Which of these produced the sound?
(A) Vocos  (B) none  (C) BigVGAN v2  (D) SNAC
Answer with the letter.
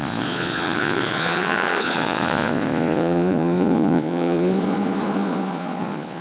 A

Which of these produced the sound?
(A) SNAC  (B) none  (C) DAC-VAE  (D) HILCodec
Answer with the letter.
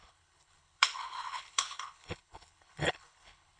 D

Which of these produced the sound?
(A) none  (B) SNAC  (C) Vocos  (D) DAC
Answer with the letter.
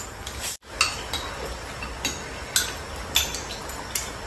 A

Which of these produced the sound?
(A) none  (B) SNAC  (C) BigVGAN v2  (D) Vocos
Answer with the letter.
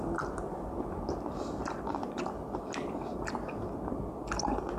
C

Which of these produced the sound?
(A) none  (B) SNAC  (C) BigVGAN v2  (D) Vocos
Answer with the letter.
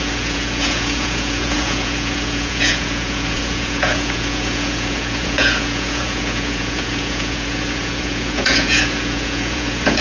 D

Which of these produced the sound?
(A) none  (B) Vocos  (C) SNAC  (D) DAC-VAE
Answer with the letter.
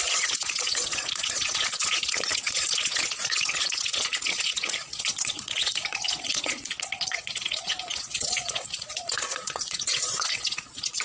B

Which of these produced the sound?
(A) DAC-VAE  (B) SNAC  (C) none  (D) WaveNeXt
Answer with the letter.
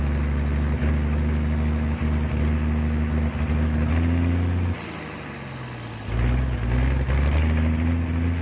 C